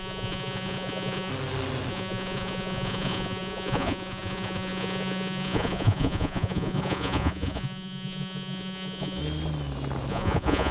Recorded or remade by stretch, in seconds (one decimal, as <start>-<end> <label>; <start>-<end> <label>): 0.0-1.3 remade; 1.3-1.9 recorded; 1.9-9.2 remade; 9.2-10.1 recorded; 10.1-10.7 remade